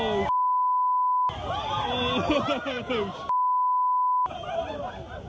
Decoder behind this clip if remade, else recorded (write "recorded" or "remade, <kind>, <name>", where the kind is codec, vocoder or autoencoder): recorded